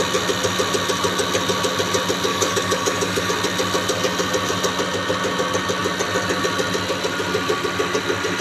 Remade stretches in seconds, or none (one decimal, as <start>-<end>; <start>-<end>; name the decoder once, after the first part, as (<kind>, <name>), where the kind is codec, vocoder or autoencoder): 2.3-3.3 (codec, DAC)